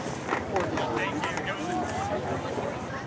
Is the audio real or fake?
real